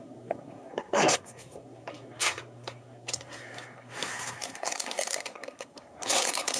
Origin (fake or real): fake